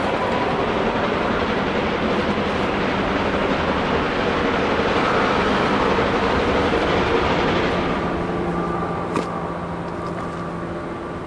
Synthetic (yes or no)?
no